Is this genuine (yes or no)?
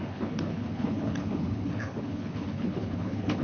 no